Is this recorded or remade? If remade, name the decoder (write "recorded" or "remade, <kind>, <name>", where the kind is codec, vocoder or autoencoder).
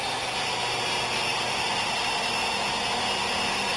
recorded